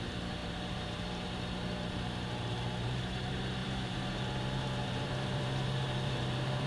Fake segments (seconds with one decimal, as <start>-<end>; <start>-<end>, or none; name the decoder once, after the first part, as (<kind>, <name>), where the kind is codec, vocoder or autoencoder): 0.0-6.7 (vocoder, BigVGAN v2)